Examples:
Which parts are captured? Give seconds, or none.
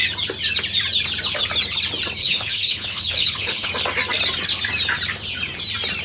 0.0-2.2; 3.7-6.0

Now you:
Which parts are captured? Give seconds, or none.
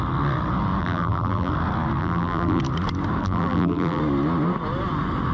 0.0-0.8; 1.5-2.0; 2.6-3.2; 4.0-5.3